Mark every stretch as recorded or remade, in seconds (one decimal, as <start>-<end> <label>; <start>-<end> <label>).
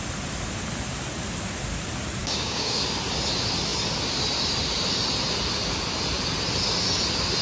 0.0-2.2 recorded; 2.2-2.8 remade; 2.8-7.4 recorded